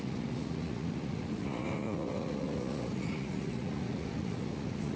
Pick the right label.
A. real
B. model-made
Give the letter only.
B